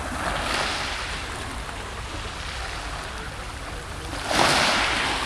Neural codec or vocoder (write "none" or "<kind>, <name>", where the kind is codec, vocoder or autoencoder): none